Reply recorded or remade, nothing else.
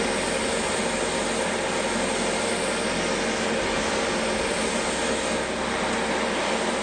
recorded